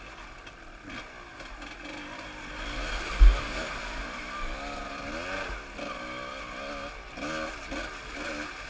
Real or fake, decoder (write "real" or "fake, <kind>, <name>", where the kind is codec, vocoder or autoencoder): real